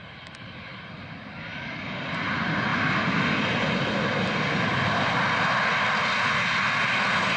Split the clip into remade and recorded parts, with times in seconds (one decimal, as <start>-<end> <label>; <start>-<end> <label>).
0.0-7.4 recorded

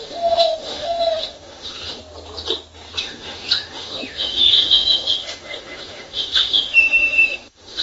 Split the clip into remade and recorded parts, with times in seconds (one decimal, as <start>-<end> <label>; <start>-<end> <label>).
0.0-2.0 remade; 2.0-3.0 recorded; 3.0-7.8 remade

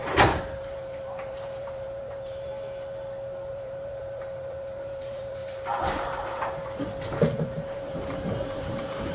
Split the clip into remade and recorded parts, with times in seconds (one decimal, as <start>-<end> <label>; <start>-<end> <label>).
0.0-2.5 remade; 2.5-3.5 recorded; 3.5-9.1 remade

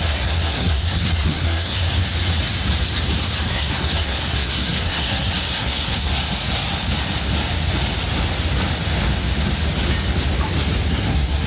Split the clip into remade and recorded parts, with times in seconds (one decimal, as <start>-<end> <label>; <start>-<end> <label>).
0.0-1.9 remade; 1.9-3.5 recorded; 3.5-6.1 remade; 6.1-10.9 recorded; 10.9-11.5 remade

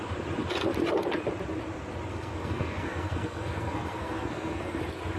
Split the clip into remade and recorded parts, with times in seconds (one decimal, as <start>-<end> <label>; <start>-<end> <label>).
0.0-2.1 recorded; 2.1-4.8 remade; 4.8-5.2 recorded

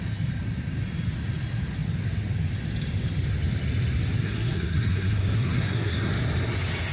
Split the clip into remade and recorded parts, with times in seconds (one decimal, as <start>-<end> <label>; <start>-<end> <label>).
0.0-4.2 recorded; 4.2-6.1 remade; 6.1-6.9 recorded

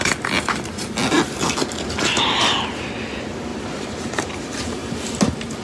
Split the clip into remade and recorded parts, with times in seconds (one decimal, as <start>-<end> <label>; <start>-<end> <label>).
0.0-3.5 recorded; 3.5-5.1 remade; 5.1-5.6 recorded